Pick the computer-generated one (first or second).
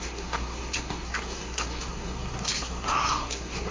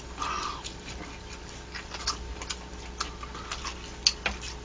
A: first